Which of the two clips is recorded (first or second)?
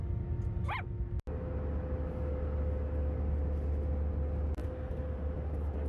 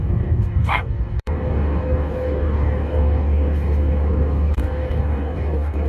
first